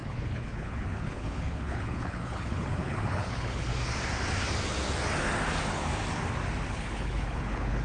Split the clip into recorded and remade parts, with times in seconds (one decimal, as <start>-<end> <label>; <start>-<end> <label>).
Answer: 0.0-3.7 remade; 3.7-6.7 recorded; 6.7-7.8 remade